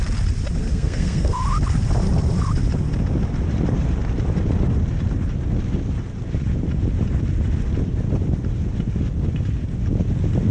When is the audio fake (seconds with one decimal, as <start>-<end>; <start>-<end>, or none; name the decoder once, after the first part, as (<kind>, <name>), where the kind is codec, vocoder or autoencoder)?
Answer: 0.6-1.4 (codec, SNAC)